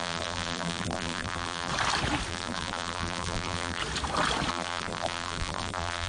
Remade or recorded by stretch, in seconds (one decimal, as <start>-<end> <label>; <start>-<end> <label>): 0.0-1.7 remade; 1.7-2.3 recorded; 2.3-3.8 remade; 3.8-4.5 recorded; 4.5-6.1 remade